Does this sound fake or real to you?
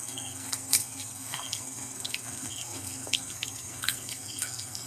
fake